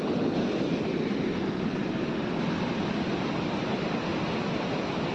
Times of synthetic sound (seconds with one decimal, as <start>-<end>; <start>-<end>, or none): none